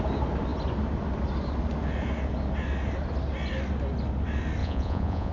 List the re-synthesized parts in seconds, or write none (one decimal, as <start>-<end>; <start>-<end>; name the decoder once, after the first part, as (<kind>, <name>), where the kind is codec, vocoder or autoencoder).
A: 4.6-5.3 (vocoder, Vocos)